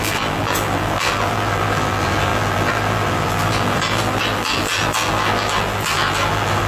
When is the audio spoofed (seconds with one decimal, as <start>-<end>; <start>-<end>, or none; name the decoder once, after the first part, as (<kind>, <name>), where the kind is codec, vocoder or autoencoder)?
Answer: 0.0-6.7 (vocoder, BigVGAN v2)